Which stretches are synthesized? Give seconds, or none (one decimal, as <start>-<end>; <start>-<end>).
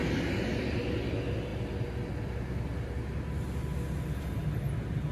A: none